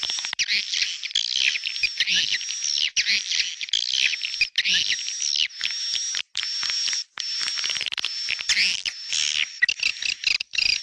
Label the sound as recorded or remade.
recorded